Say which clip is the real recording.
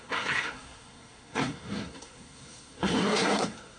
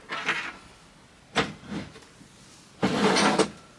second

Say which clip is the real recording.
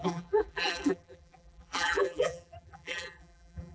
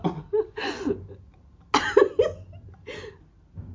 second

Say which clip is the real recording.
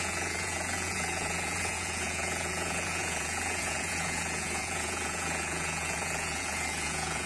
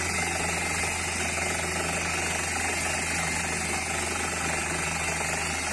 second